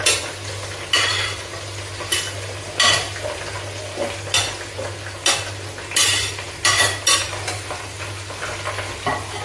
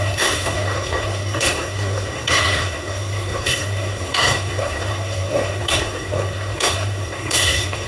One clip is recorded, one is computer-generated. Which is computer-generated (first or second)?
second